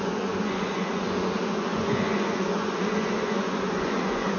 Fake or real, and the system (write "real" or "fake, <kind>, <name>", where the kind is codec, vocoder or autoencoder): fake, vocoder, Vocos